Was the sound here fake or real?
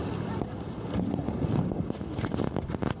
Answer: real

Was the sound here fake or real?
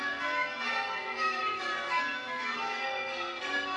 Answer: fake